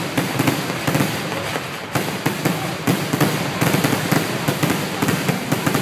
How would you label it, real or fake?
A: real